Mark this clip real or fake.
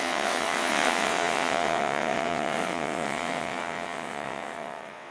fake